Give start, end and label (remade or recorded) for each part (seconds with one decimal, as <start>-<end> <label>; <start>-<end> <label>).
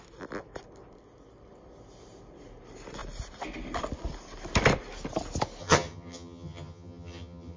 0.0-5.6 recorded; 5.6-7.6 remade